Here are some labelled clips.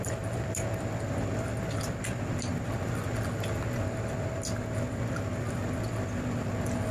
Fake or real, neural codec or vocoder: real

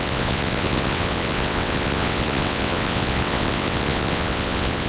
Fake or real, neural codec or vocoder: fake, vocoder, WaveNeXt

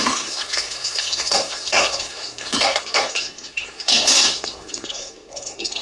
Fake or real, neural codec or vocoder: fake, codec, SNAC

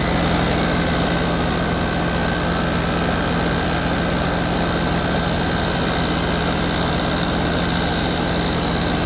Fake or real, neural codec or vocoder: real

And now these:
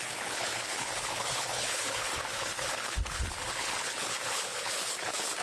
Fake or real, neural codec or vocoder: fake, codec, HILCodec